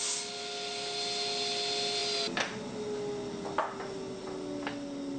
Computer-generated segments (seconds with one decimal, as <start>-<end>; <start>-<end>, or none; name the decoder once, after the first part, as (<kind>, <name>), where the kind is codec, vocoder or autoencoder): none